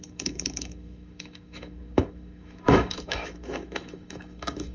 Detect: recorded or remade remade